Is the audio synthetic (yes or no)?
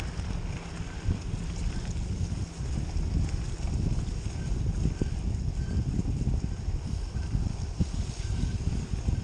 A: no